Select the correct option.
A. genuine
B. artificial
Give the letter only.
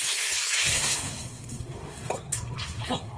B